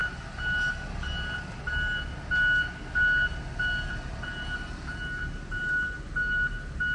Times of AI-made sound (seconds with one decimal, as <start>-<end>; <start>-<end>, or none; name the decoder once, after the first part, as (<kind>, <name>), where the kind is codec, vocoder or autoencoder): none